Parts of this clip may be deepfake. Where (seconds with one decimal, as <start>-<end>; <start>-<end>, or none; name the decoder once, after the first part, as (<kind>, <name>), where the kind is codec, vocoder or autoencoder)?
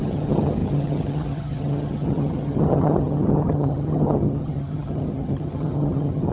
0.0-6.3 (vocoder, HiFi-GAN)